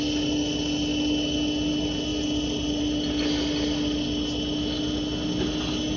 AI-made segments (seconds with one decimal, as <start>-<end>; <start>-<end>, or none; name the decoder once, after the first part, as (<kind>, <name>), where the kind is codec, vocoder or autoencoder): none